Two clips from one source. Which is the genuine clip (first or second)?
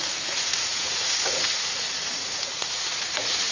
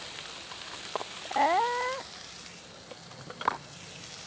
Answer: second